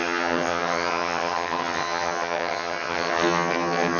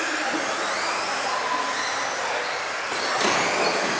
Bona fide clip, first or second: second